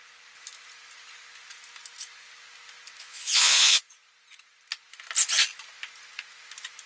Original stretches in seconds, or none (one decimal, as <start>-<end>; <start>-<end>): 0.0-3.0; 3.8-6.9